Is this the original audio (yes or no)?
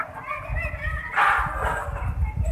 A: yes